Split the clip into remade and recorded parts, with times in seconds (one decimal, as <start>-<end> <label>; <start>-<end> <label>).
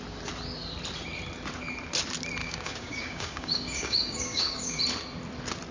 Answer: 0.0-2.4 recorded; 2.4-4.8 remade; 4.8-5.7 recorded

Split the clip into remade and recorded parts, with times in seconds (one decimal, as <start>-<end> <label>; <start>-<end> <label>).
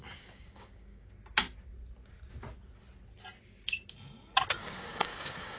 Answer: 0.0-1.1 remade; 1.1-4.6 recorded; 4.6-5.6 remade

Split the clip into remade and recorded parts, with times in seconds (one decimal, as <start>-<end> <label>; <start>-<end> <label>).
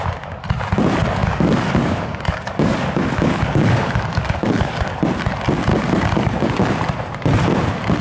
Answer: 0.0-1.2 recorded; 1.2-5.0 remade; 5.0-5.7 recorded; 5.7-6.7 remade; 6.7-8.0 recorded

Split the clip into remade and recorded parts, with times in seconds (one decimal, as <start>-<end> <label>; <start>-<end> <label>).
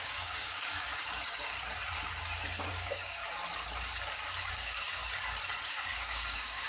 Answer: 0.0-0.9 remade; 0.9-2.7 recorded; 2.7-3.2 remade; 3.2-4.5 recorded; 4.5-5.0 remade; 5.0-5.7 recorded; 5.7-6.7 remade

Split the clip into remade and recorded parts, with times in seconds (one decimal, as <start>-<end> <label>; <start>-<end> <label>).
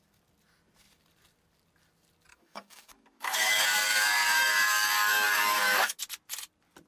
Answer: 0.0-2.3 recorded; 2.3-6.0 remade; 6.0-6.9 recorded